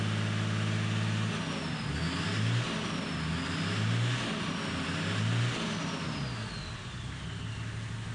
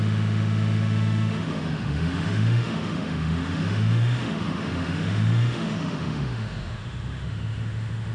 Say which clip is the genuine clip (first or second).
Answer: first